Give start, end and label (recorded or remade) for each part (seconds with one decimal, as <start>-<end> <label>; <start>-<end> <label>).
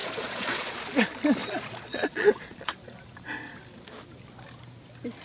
0.0-0.7 remade; 0.7-1.4 recorded; 1.4-2.8 remade; 2.8-5.2 recorded